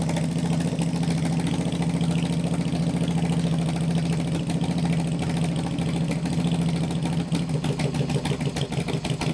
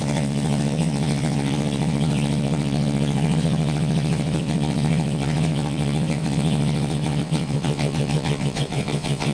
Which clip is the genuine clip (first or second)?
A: first